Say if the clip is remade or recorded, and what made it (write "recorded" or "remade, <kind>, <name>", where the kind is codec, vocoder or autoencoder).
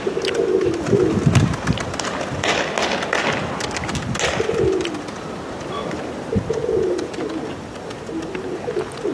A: recorded